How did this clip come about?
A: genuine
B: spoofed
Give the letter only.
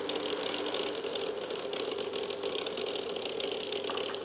A